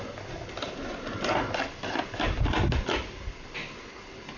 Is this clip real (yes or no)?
yes